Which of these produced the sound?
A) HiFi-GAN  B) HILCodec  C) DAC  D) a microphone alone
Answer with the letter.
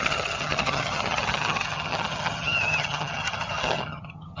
A